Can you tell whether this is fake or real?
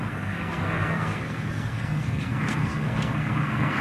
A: fake